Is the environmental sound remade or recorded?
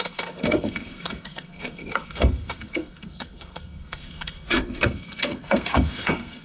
remade